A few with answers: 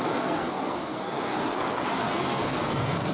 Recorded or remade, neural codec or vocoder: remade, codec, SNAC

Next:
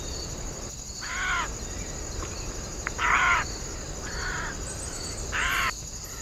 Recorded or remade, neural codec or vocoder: recorded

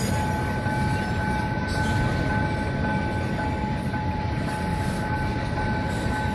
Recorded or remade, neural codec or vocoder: recorded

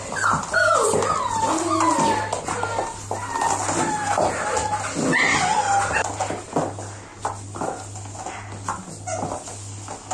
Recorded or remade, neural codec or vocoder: recorded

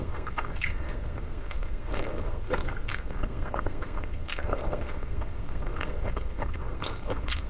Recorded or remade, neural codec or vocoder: remade, codec, SNAC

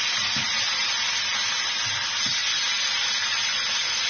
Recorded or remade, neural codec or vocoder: recorded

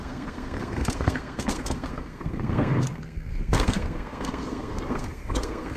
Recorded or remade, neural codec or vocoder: remade, codec, SNAC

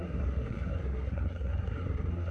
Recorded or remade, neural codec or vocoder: remade, codec, SNAC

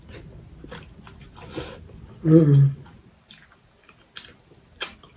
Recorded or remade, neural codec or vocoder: recorded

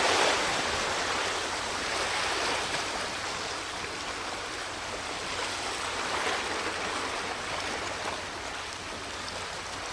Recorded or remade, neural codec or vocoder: recorded